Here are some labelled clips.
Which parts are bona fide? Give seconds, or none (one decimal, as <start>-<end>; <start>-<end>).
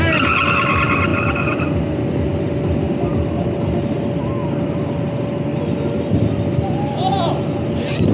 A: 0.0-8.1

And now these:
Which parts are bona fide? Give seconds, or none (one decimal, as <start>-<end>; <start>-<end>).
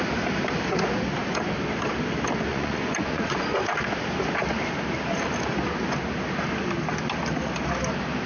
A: 0.0-2.5; 3.6-8.3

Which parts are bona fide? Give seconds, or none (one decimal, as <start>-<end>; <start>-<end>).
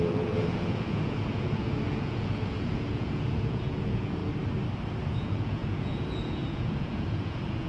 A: 4.2-5.1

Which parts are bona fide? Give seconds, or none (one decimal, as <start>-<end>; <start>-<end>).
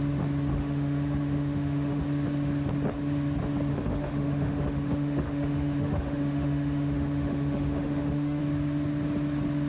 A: 0.0-0.5; 2.0-3.7; 8.4-9.7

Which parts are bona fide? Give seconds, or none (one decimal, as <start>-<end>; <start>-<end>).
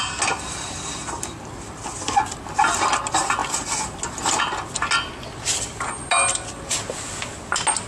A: 0.0-7.9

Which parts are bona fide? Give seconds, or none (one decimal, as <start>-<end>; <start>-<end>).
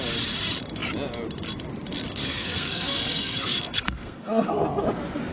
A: 0.0-2.1; 4.6-5.3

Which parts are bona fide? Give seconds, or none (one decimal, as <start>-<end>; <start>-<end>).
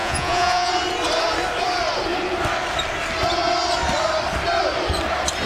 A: 0.7-5.5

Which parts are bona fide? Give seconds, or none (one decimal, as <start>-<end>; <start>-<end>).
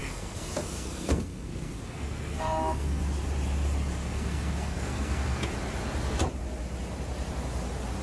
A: 3.0-4.0; 5.5-8.0